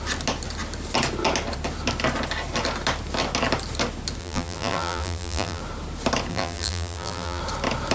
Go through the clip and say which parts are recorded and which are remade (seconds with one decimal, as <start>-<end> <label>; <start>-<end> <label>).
0.0-4.2 recorded; 4.2-5.6 remade; 5.6-6.3 recorded; 6.3-7.4 remade; 7.4-7.9 recorded

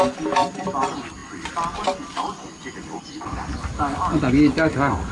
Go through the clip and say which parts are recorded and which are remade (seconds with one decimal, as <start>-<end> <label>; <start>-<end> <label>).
0.0-5.1 recorded

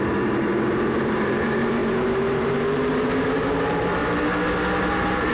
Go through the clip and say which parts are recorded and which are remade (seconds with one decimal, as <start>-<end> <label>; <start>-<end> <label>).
0.0-4.0 remade; 4.0-4.8 recorded; 4.8-5.3 remade

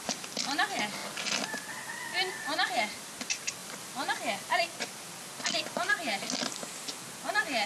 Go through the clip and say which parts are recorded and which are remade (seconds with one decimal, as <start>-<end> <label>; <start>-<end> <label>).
0.0-1.0 remade; 1.0-2.3 recorded; 2.3-6.2 remade; 6.2-7.3 recorded; 7.3-7.7 remade

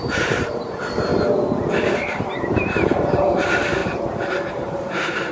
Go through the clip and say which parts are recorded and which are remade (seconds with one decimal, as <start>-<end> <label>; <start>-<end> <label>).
0.0-1.1 remade; 1.1-1.7 recorded; 1.7-3.8 remade; 3.8-4.5 recorded; 4.5-5.3 remade

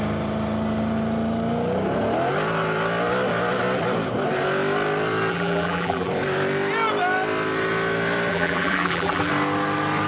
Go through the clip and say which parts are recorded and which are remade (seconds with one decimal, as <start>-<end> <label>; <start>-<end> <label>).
0.0-5.3 recorded; 5.3-6.1 remade; 6.1-8.3 recorded; 8.3-9.3 remade; 9.3-10.1 recorded